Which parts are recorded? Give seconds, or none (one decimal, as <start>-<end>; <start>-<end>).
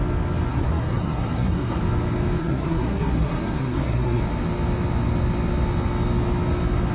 0.0-0.5; 1.8-2.4; 4.2-6.9